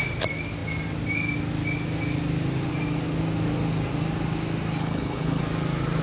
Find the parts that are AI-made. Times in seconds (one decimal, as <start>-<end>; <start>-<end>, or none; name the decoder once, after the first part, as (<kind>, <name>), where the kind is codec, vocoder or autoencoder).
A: 4.8-5.4 (codec, HILCodec)